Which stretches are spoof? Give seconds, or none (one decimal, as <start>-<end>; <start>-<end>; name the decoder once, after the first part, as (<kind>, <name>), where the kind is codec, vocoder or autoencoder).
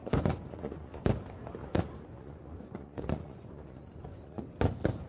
0.0-1.0 (vocoder, Vocos); 1.6-4.4